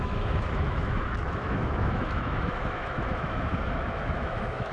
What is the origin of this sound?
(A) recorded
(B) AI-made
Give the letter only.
B